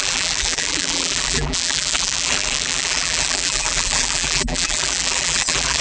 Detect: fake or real fake